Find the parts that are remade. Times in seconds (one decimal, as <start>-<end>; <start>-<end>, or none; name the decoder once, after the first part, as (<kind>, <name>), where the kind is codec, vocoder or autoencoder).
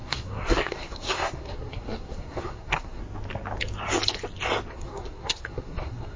0.0-3.0 (codec, SNAC); 4.7-6.2